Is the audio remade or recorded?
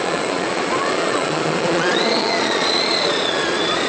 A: remade